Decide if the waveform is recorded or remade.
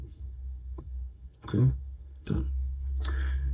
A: remade